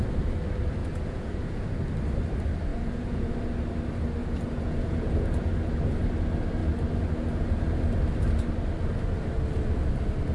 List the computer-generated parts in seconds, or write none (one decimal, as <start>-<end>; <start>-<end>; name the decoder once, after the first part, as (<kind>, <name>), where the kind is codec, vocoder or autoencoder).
0.8-1.7 (vocoder, Vocos); 2.7-3.3; 4.2-5.5